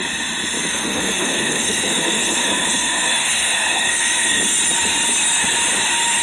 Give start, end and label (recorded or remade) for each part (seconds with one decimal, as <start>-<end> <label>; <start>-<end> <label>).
0.0-0.7 recorded; 0.7-4.4 remade; 4.4-6.2 recorded